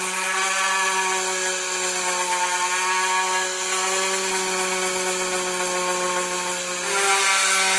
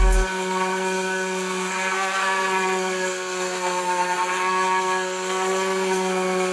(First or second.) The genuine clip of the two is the first